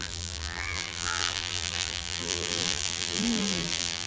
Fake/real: fake